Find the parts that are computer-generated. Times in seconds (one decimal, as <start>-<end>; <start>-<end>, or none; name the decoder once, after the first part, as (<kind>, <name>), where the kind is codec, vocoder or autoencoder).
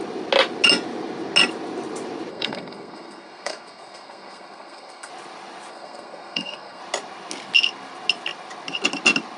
2.3-5.1 (codec, SNAC); 5.7-6.8